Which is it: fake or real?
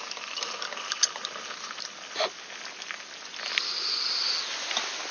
real